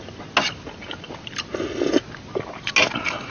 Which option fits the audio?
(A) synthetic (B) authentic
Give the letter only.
B